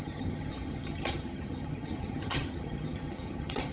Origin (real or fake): fake